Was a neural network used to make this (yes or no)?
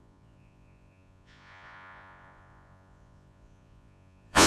yes